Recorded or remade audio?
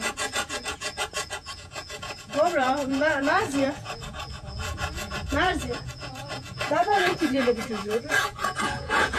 remade